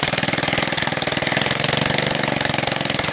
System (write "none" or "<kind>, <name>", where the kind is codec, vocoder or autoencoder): none